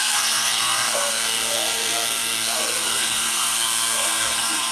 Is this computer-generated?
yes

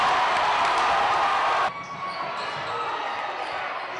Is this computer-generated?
no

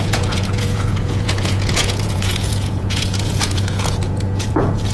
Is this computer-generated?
yes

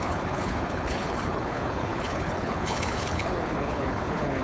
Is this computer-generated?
yes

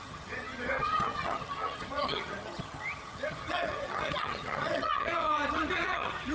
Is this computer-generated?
yes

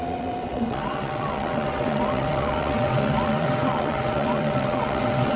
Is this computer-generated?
yes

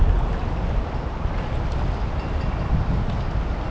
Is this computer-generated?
no